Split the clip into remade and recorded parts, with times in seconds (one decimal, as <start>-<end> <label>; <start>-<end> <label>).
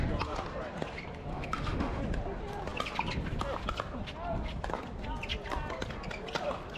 0.0-1.3 recorded; 1.3-2.0 remade; 2.0-6.8 recorded